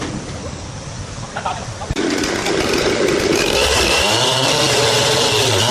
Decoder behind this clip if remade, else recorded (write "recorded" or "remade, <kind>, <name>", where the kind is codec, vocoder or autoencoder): recorded